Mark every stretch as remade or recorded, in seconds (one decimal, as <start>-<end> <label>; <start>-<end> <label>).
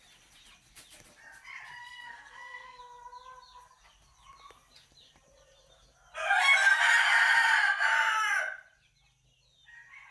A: 0.0-1.8 recorded; 1.8-2.8 remade; 2.8-10.1 recorded